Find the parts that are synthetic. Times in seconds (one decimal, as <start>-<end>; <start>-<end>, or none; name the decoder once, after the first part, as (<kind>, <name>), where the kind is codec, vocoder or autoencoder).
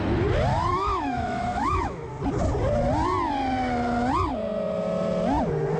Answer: 0.5-2.1 (autoencoder, DAC-VAE)